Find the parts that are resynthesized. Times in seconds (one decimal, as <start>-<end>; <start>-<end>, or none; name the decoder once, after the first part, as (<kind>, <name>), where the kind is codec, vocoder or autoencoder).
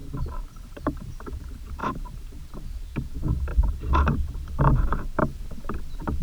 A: 0.6-5.2 (vocoder, BigVGAN v2)